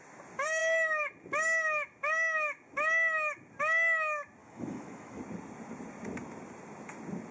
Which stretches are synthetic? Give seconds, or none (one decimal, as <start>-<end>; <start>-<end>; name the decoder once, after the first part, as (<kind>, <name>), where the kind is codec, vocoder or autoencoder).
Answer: 4.4-5.2 (autoencoder, DAC-VAE)